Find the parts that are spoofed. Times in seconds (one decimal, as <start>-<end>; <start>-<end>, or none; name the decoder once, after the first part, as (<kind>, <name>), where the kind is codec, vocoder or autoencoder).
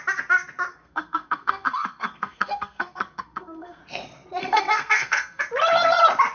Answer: 0.7-3.8 (codec, SNAC); 4.4-5.4